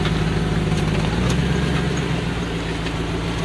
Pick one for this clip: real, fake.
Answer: real